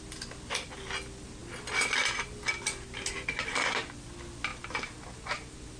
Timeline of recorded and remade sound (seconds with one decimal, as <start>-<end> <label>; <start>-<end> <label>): 0.0-5.8 recorded